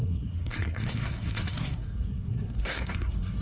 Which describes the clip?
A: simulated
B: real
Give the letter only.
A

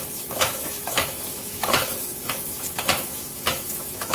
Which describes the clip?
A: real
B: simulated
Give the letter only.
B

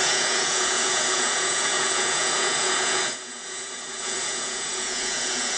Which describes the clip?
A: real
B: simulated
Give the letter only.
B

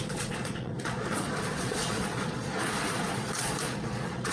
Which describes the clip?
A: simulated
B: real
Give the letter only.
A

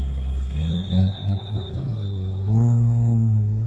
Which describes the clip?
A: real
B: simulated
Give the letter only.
B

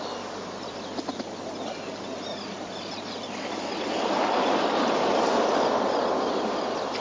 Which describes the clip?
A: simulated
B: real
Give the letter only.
B